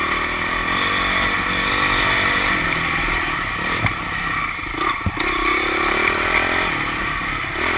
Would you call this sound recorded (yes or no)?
yes